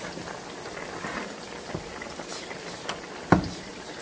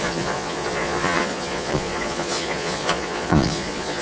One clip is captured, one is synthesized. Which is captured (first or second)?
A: first